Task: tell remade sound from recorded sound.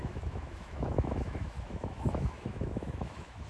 remade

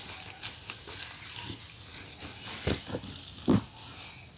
recorded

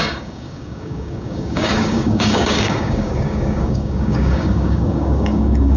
remade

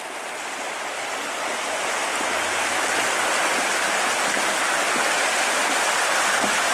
recorded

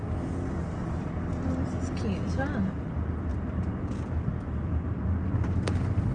recorded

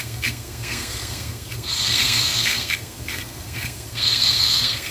remade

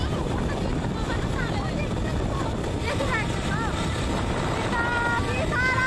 recorded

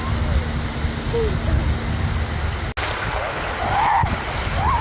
recorded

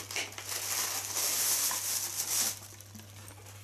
recorded